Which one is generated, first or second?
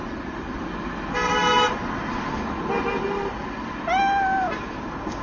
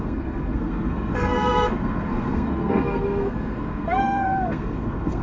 second